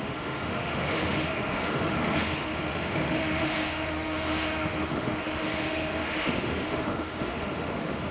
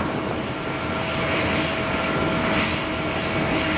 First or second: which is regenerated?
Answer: first